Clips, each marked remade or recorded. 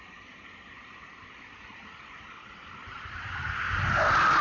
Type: recorded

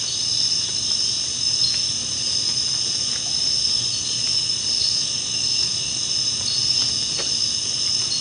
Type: recorded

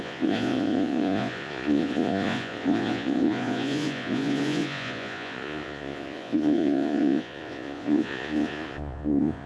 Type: remade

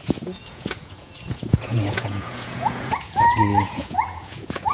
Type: remade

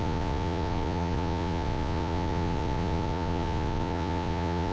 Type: remade